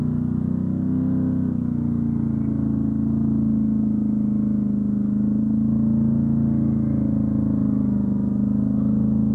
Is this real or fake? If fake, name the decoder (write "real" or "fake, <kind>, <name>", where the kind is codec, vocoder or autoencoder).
real